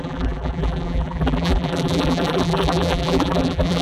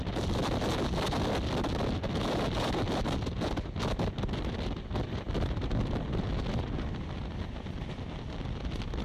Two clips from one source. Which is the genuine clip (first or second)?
second